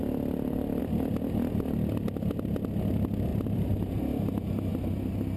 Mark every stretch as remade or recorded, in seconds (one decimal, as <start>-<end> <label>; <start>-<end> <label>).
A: 0.0-3.3 recorded; 3.3-4.0 remade; 4.0-5.4 recorded